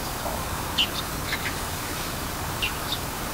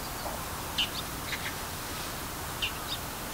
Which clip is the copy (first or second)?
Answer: first